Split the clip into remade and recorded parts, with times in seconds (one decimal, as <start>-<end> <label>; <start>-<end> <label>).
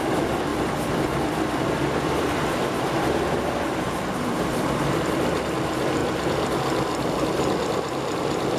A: 0.0-0.5 recorded; 0.5-5.4 remade; 5.4-8.6 recorded